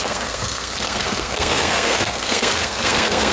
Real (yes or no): no